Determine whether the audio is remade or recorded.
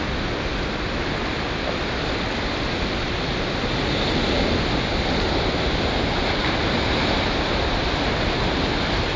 recorded